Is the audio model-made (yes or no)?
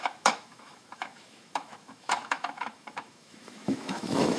yes